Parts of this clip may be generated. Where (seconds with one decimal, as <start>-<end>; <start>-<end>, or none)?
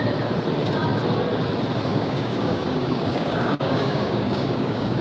1.9-5.0